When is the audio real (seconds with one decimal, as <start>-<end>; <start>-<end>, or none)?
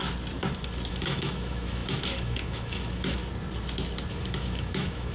0.0-0.9; 3.2-4.1